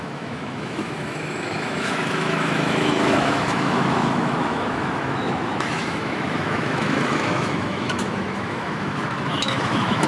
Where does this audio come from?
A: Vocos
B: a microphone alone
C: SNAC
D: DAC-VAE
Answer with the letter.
D